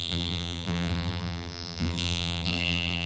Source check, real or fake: fake